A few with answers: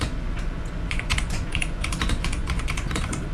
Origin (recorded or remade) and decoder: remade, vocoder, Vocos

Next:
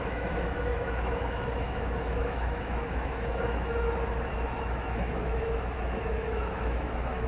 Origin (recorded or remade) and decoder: remade, autoencoder, DAC-VAE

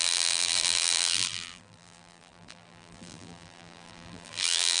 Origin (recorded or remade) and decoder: remade, vocoder, BigVGAN v2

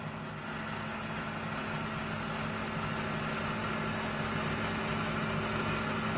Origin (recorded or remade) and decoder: recorded